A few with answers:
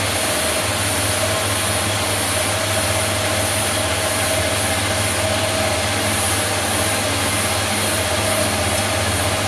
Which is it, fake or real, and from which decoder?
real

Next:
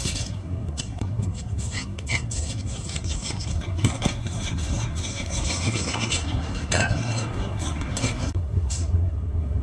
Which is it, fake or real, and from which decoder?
fake, codec, SNAC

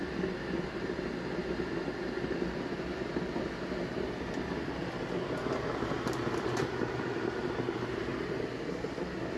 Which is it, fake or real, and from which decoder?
real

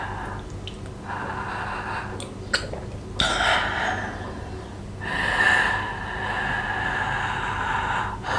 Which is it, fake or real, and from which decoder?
real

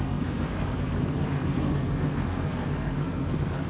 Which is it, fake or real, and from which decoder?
fake, codec, SNAC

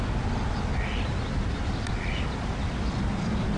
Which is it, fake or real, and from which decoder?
real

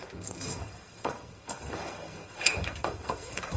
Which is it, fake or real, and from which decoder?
fake, codec, SNAC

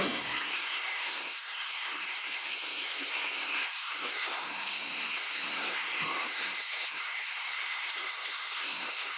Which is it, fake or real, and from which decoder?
fake, codec, SNAC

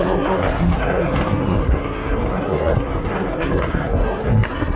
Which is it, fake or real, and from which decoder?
fake, codec, SNAC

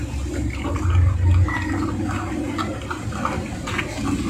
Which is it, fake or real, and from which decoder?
real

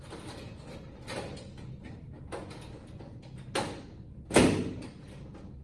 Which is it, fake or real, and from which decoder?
real